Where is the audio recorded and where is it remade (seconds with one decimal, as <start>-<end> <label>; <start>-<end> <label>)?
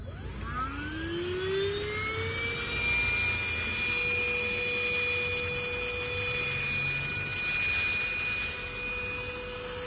0.0-9.9 recorded